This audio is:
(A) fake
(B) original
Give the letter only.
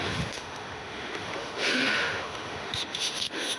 A